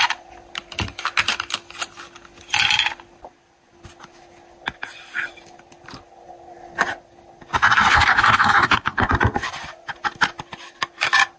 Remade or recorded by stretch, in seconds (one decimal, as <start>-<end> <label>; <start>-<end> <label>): 0.0-7.9 recorded; 7.9-9.1 remade; 9.1-11.4 recorded